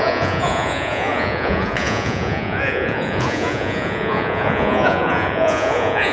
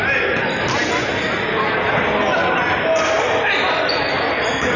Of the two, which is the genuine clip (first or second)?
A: second